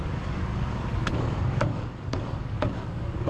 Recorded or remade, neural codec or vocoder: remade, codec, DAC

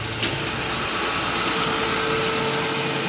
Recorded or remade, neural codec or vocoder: recorded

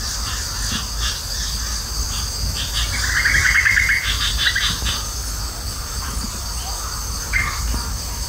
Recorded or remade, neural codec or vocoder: recorded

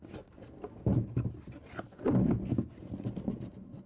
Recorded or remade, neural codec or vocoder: recorded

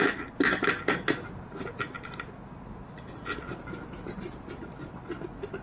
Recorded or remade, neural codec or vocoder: recorded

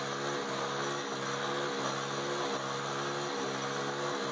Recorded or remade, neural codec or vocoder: recorded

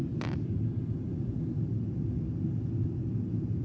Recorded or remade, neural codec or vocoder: recorded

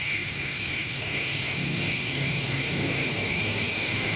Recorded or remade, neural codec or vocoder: remade, codec, DAC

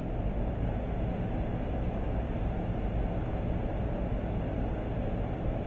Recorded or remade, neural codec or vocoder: recorded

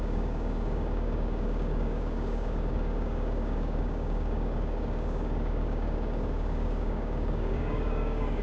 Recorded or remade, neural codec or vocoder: remade, codec, DAC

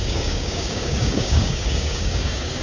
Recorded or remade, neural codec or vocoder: remade, codec, DAC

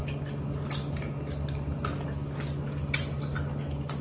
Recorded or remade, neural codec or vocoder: recorded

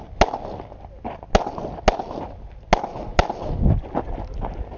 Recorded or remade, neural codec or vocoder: recorded